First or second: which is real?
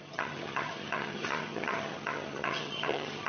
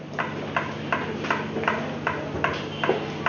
second